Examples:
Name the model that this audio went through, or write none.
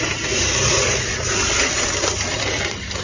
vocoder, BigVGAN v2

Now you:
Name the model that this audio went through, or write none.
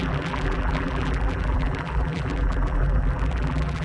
vocoder, BigVGAN v2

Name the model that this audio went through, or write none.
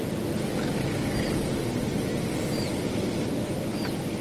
none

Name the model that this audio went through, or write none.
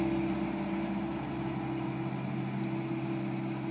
none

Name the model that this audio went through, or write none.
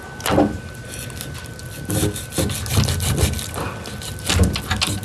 none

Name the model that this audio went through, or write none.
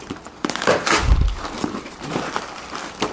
vocoder, BigVGAN v2